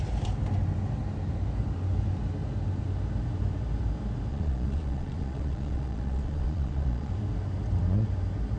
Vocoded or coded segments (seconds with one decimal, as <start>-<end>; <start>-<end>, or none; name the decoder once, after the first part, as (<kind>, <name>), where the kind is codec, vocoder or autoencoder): 4.3-7.1 (vocoder, Vocos)